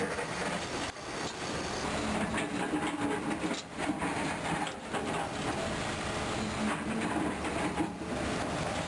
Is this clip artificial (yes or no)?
no